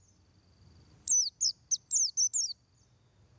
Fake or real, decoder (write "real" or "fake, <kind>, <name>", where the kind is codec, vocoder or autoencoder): real